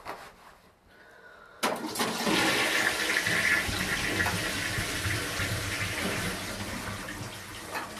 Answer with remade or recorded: recorded